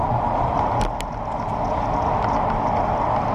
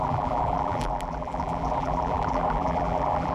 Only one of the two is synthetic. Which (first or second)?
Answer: second